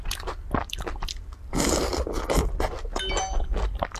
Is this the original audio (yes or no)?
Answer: yes